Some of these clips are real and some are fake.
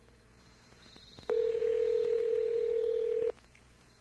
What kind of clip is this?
fake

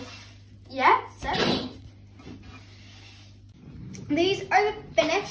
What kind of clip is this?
real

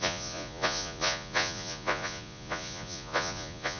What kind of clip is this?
fake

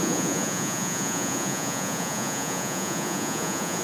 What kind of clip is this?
fake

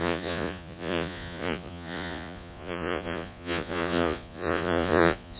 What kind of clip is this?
fake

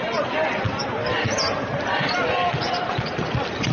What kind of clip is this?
real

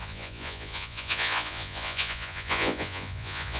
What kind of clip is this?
fake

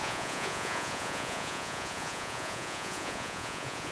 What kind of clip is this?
fake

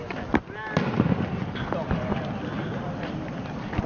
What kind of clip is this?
real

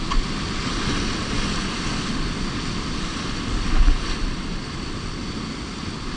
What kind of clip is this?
real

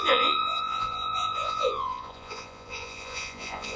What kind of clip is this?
fake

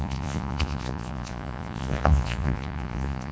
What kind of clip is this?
fake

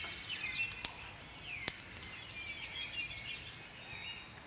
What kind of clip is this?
real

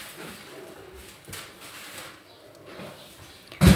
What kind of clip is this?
real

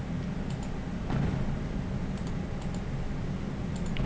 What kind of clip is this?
real